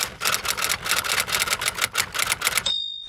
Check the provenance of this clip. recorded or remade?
recorded